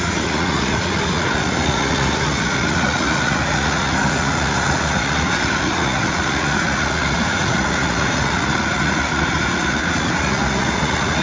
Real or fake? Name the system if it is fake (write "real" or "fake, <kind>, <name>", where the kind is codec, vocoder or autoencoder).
fake, vocoder, Vocos